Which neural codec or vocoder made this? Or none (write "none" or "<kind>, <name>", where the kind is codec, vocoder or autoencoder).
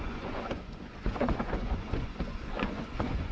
vocoder, Vocos